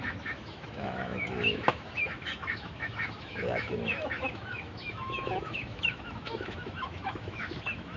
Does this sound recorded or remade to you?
remade